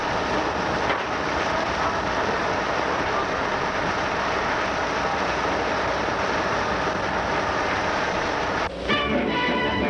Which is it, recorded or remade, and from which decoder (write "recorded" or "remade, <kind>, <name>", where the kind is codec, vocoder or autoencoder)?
recorded